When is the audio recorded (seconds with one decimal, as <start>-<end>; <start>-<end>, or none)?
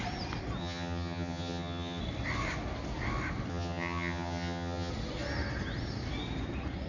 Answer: 0.0-0.6; 2.0-3.5; 4.9-6.9